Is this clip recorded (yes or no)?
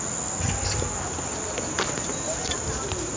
yes